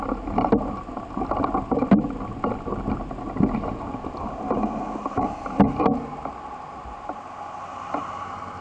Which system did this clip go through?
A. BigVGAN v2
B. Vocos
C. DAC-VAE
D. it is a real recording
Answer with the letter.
D